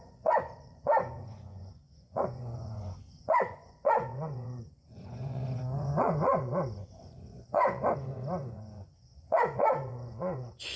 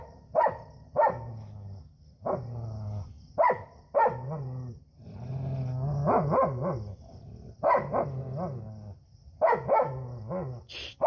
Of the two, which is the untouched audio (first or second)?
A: second